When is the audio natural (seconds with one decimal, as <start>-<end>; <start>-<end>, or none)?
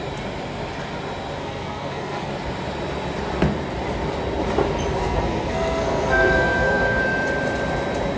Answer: 0.0-1.4; 2.3-5.0; 7.0-8.2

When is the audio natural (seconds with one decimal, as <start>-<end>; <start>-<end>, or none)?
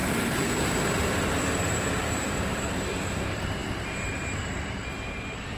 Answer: none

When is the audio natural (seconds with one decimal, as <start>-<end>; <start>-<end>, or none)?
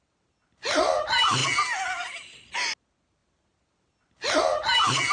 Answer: 0.0-5.1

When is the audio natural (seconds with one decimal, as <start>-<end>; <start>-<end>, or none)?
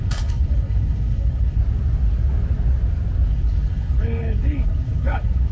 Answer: 1.6-3.3